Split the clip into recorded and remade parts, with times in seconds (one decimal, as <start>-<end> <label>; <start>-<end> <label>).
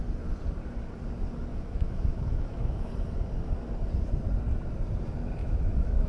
0.0-1.5 recorded; 1.5-2.9 remade; 2.9-5.4 recorded; 5.4-6.1 remade